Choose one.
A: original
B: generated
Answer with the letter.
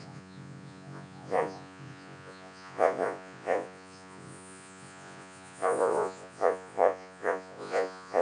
B